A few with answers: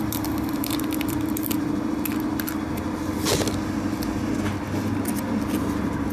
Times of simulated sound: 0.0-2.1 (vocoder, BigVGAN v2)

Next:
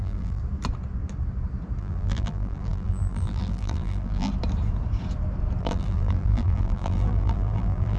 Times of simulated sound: 0.0-0.4 (vocoder, BigVGAN v2); 1.8-4.3; 5.6-8.0

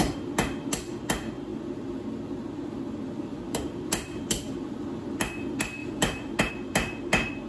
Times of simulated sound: 5.8-6.5 (vocoder, BigVGAN v2)

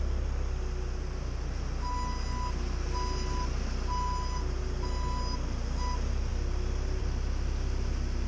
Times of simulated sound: none